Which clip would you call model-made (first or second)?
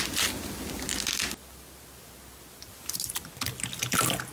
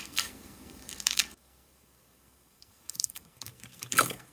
second